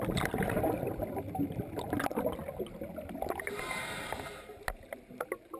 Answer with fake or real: real